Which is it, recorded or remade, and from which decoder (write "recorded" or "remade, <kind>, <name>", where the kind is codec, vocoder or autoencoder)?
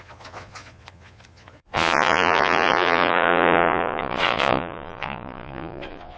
remade, vocoder, Vocos